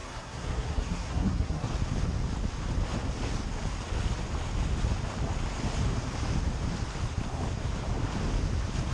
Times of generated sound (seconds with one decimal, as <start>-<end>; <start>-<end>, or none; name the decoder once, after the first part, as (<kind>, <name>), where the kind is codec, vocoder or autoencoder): 0.0-1.7 (codec, SNAC)